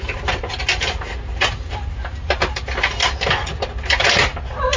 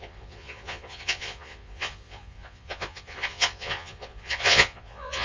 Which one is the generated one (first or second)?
second